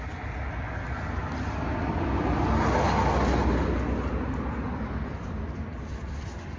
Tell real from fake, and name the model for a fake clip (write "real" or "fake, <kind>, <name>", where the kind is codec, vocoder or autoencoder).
real